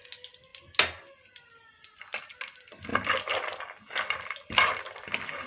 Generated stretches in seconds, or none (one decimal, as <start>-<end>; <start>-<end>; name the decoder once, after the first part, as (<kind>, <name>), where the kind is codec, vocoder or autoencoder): none